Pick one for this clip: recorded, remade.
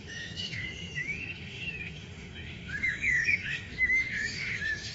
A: remade